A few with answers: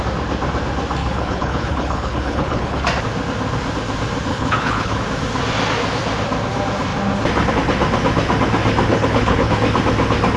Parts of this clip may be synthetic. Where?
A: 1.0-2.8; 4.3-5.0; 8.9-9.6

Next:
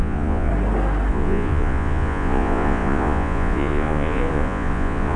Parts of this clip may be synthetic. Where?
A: 0.0-0.5; 1.1-5.2

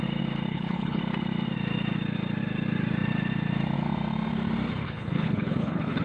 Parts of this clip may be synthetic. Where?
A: 0.5-1.0; 4.8-6.0

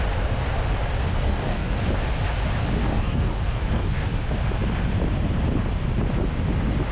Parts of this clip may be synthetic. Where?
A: 1.1-1.8; 2.8-4.2

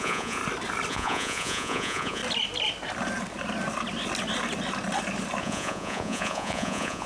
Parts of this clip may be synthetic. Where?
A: 0.0-0.4; 0.9-2.2; 5.4-7.1

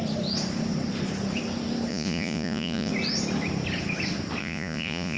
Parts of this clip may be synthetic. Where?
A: 1.9-2.9; 4.4-5.2

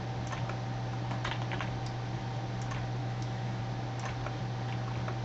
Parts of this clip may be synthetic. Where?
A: 3.0-3.6

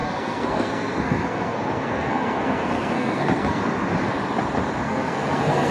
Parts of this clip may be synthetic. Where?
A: 0.0-3.6; 4.8-5.7